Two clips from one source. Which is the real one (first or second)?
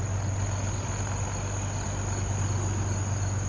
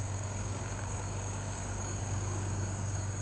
first